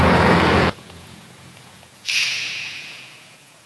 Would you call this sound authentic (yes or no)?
no